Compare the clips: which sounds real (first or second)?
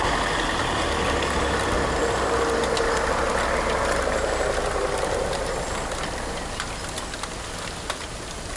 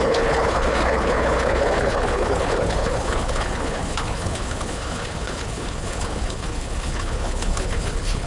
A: first